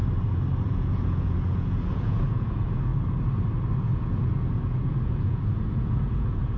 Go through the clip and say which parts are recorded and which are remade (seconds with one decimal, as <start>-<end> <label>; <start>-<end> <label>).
0.0-0.7 recorded; 0.7-2.9 remade; 2.9-3.8 recorded; 3.8-6.6 remade